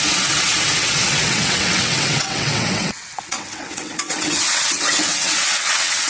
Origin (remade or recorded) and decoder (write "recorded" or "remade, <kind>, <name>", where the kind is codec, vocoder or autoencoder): remade, vocoder, WaveNeXt